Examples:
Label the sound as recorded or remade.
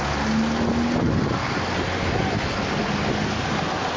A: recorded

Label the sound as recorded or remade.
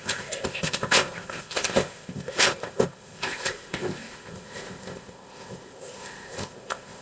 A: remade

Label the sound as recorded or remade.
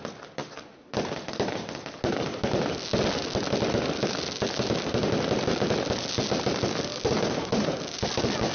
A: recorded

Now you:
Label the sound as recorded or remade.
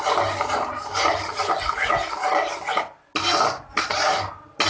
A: recorded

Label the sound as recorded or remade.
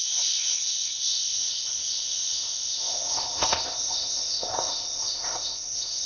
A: remade